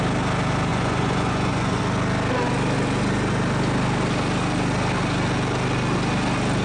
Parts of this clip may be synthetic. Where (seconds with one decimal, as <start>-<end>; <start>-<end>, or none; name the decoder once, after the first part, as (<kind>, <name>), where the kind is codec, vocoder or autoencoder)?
0.7-1.8 (vocoder, Vocos)